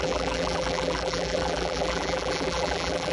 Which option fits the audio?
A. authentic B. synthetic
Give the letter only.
B